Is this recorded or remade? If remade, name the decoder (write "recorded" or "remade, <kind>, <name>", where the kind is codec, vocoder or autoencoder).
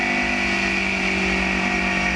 recorded